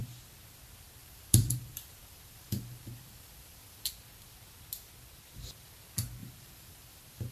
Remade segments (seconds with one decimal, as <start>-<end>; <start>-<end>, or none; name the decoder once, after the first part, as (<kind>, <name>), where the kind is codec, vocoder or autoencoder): 1.0-3.9 (vocoder, BigVGAN v2); 6.2-7.3